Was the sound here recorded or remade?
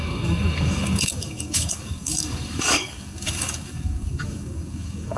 remade